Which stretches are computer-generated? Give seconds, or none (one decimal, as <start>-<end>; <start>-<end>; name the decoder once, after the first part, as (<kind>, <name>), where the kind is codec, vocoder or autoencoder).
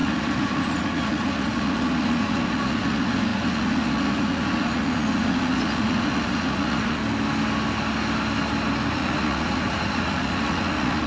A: 0.0-7.0 (vocoder, Vocos); 8.9-11.1